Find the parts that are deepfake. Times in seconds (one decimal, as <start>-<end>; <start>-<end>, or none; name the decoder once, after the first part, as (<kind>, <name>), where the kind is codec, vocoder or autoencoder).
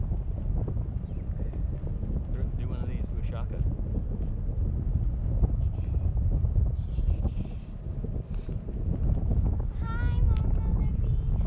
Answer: none